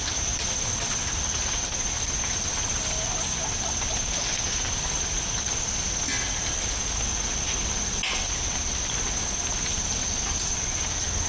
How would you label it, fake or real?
real